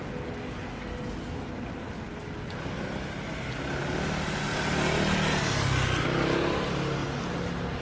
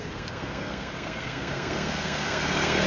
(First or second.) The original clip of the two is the first